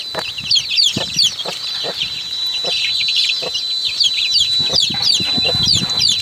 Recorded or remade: remade